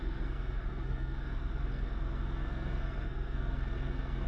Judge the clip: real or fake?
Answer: fake